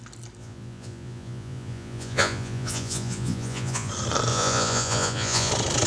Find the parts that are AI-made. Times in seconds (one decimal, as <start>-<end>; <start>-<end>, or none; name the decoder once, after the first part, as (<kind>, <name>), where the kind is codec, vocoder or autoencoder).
0.4-3.9 (vocoder, Vocos); 4.3-5.5